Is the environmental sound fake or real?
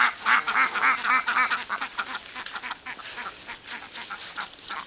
real